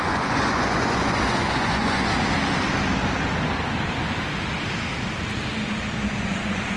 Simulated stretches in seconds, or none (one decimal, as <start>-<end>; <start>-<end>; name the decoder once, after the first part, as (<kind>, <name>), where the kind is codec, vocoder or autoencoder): 0.0-2.1 (vocoder, Vocos); 6.2-6.8